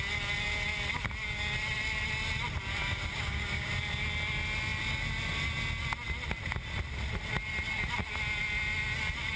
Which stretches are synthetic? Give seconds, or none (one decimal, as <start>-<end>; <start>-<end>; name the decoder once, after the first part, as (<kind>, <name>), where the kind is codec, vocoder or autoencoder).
2.8-3.7 (codec, DAC)